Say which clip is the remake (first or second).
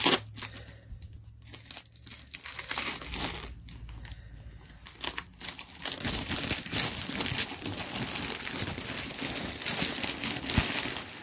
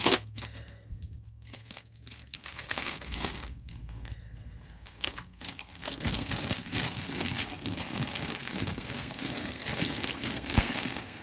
second